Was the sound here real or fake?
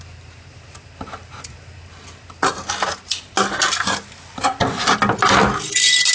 real